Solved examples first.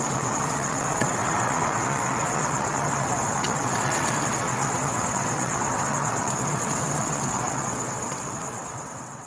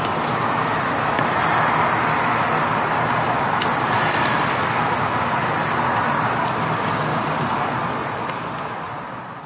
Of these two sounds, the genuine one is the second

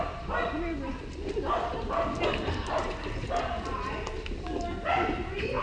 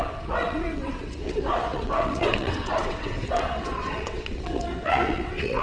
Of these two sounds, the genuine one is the first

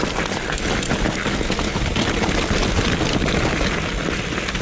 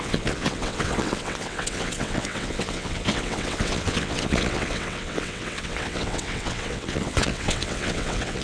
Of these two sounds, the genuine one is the first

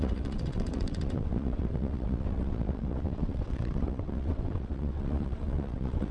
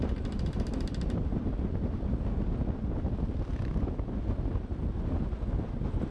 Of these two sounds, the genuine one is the second